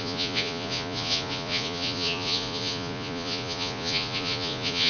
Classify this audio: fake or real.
fake